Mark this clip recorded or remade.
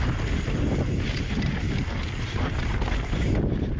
recorded